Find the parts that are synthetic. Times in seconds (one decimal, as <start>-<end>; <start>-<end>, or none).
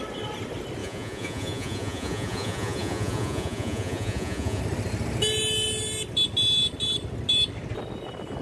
0.8-4.6